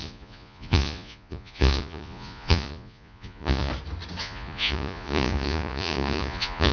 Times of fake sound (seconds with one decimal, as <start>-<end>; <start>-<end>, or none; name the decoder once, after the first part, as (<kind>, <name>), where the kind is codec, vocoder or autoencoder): 0.0-3.7 (vocoder, Vocos); 4.2-6.7